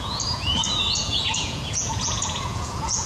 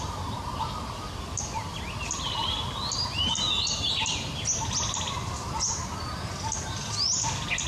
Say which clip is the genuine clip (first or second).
second